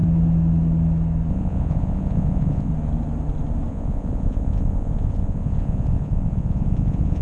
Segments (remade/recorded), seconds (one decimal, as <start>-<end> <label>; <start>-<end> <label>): 0.0-1.3 recorded; 1.3-2.7 remade; 2.7-3.7 recorded; 3.7-7.2 remade

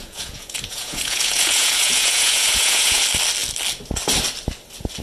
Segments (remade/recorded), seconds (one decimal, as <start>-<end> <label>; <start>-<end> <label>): 0.0-3.0 remade; 3.0-5.0 recorded

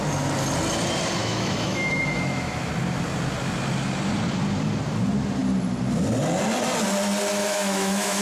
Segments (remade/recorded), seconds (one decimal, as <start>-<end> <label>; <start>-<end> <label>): 0.0-1.2 recorded; 1.2-2.7 remade; 2.7-7.4 recorded; 7.4-8.2 remade

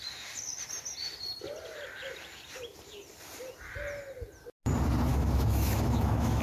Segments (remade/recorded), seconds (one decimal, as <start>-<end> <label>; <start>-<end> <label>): 0.0-5.1 recorded; 5.1-6.4 remade

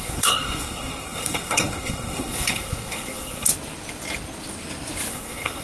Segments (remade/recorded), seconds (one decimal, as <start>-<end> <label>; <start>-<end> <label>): 0.0-3.5 remade; 3.5-5.1 recorded; 5.1-5.6 remade

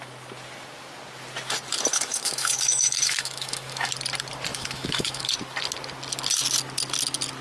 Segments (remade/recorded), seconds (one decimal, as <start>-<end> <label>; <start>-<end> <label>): 0.0-1.9 recorded; 1.9-3.9 remade; 3.9-4.5 recorded; 4.5-5.3 remade; 5.3-7.4 recorded

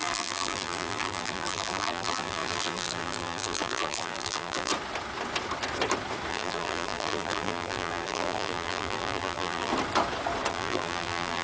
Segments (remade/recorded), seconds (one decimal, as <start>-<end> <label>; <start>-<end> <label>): 0.0-4.7 remade; 4.7-6.3 recorded; 6.3-9.7 remade; 9.7-10.5 recorded; 10.5-11.4 remade